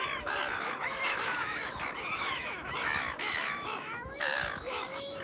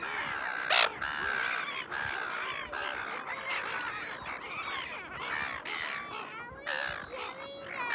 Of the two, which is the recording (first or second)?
second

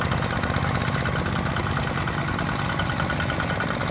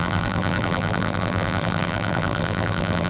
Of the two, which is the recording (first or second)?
first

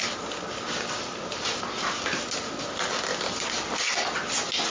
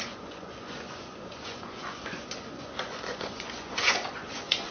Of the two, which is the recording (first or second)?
first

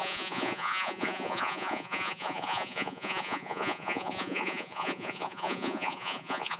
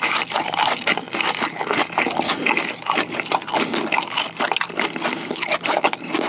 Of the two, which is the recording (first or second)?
second